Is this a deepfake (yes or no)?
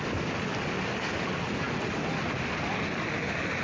no